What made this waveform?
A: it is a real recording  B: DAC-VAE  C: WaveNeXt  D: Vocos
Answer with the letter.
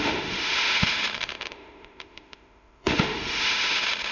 B